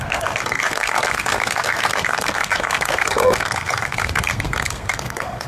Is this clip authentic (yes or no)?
no